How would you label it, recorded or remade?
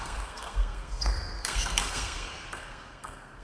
remade